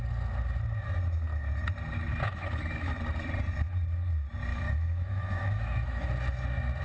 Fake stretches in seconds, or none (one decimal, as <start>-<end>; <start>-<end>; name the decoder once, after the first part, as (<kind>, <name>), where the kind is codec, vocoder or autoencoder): 2.1-3.0 (autoencoder, DAC-VAE); 4.5-6.1